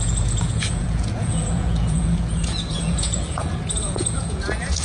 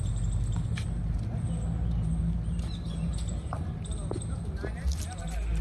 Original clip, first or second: second